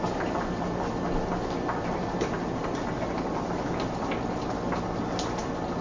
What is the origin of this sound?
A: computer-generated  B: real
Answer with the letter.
B